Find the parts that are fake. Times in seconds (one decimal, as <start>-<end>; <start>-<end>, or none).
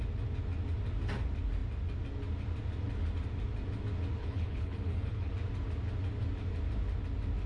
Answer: 4.2-5.3